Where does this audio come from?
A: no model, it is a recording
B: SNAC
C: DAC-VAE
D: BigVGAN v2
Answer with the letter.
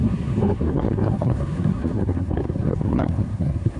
B